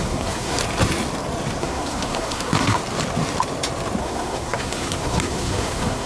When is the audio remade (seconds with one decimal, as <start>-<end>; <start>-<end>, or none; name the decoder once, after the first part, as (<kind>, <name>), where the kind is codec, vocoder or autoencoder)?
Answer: 0.0-0.6 (codec, SNAC); 1.6-2.8; 4.0-6.1